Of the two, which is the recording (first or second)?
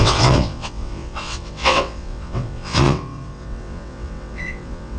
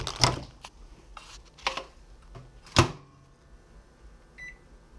second